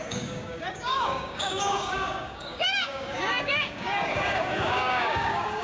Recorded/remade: remade